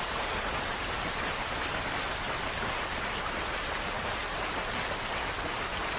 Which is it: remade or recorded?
recorded